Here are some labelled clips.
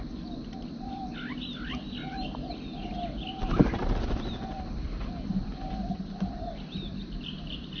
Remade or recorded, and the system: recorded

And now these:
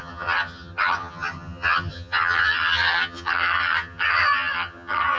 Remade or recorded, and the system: remade, vocoder, HiFi-GAN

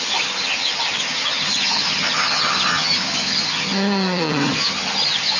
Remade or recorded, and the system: remade, vocoder, HiFi-GAN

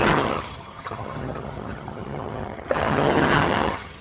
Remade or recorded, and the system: remade, vocoder, HiFi-GAN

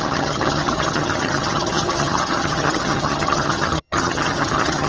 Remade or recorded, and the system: remade, vocoder, HiFi-GAN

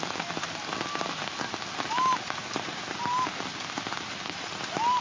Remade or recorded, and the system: recorded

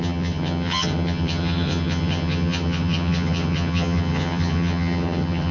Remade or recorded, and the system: remade, vocoder, HiFi-GAN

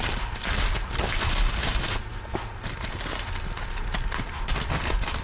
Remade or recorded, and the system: recorded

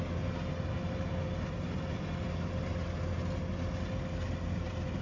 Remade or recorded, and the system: recorded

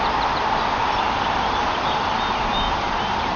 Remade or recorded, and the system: recorded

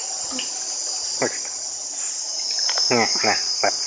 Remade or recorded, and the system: recorded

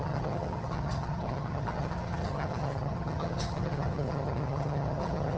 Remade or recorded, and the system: remade, vocoder, HiFi-GAN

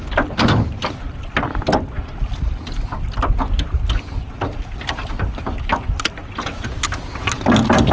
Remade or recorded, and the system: recorded